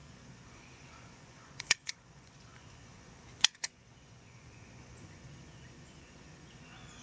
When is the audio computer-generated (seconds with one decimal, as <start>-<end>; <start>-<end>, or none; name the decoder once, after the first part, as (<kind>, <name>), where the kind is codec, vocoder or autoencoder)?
0.0-7.0 (vocoder, Vocos)